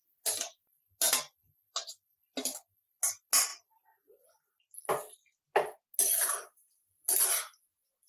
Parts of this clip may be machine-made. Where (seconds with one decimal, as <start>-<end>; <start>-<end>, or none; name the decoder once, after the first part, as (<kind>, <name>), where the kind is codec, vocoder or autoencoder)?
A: none